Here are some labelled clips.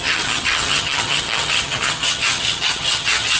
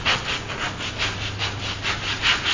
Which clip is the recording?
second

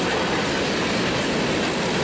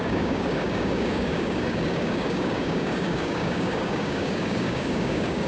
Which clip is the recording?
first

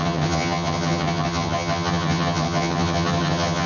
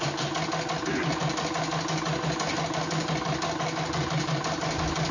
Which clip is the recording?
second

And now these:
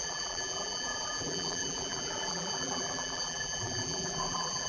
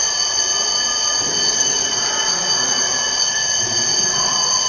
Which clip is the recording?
second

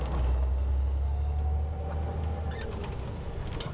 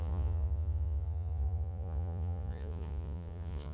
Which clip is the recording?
first